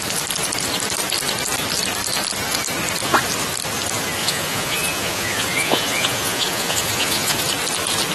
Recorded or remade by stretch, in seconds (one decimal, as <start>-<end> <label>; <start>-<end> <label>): 0.0-4.2 recorded; 4.2-7.4 remade; 7.4-8.1 recorded